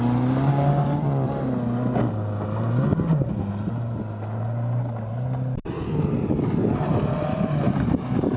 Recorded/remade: recorded